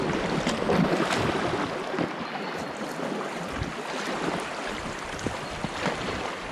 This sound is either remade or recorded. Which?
recorded